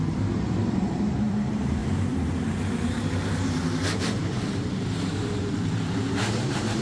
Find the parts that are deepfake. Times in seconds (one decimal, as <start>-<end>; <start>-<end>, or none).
0.0-6.8